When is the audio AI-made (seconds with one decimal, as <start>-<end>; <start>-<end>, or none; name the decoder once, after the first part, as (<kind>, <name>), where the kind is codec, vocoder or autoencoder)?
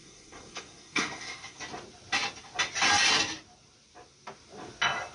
0.0-1.6 (codec, SNAC)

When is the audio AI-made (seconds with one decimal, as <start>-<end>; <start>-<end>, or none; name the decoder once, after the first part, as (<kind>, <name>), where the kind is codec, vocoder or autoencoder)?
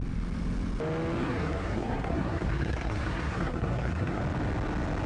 1.2-4.2 (codec, SNAC)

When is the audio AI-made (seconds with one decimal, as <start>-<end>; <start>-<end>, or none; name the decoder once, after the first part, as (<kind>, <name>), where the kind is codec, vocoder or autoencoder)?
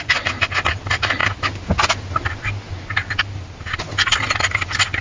none